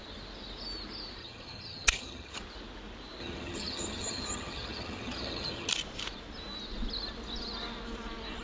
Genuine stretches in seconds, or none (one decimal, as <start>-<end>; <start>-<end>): 0.0-1.2; 2.4-3.2; 5.7-8.4